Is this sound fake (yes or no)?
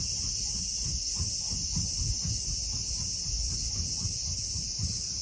no